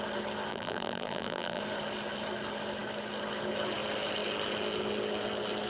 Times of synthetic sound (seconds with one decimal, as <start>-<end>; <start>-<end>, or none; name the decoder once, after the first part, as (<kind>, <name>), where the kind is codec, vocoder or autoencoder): 0.5-1.6 (vocoder, BigVGAN v2)